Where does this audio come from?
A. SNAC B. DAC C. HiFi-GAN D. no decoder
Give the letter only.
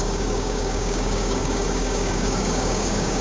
B